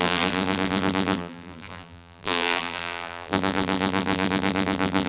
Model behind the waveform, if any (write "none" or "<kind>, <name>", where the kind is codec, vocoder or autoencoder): vocoder, BigVGAN v2